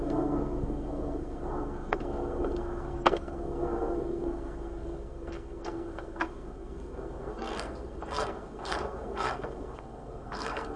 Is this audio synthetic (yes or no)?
yes